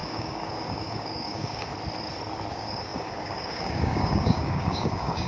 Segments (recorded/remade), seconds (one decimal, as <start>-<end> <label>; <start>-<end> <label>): 0.0-1.7 remade; 1.7-2.5 recorded; 2.5-5.3 remade